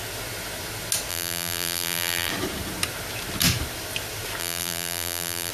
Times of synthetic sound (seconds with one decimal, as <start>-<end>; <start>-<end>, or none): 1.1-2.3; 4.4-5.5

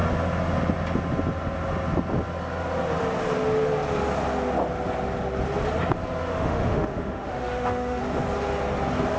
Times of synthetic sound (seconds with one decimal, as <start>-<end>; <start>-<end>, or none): 6.3-8.0

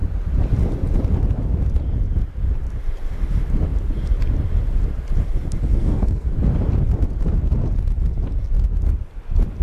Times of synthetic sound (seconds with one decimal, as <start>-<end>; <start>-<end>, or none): 5.7-6.3

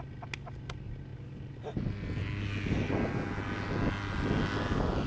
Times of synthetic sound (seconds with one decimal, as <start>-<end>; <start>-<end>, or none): none

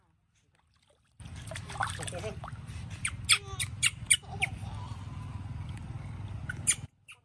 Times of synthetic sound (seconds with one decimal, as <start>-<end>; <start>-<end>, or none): none

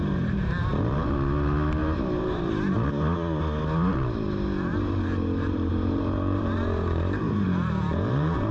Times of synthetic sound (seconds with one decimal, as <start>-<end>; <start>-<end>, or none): 0.0-1.1; 1.8-2.5; 4.7-8.5

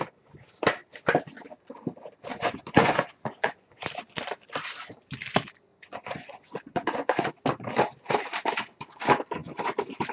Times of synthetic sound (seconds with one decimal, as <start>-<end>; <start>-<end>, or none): 2.3-3.9; 5.7-7.3

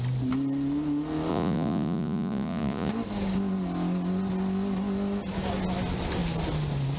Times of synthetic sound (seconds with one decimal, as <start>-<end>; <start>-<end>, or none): 1.3-2.9